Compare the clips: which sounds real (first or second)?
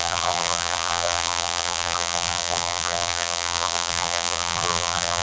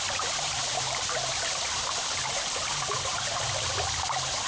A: second